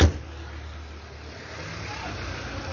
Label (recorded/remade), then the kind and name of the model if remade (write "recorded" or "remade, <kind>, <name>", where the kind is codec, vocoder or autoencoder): recorded